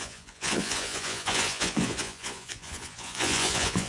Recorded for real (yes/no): no